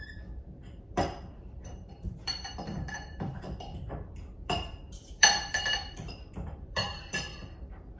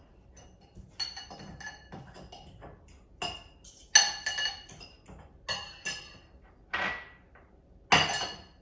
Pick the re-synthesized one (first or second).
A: first